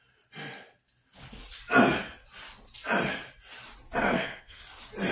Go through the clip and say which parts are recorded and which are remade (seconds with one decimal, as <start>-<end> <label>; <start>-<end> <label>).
0.0-4.0 recorded; 4.0-4.6 remade; 4.6-5.1 recorded